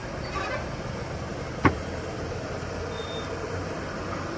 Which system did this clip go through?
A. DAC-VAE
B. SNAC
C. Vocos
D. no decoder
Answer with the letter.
D